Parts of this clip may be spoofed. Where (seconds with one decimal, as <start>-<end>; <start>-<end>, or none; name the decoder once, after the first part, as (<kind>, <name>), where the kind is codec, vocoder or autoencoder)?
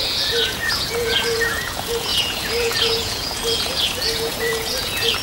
0.0-5.2 (vocoder, Vocos)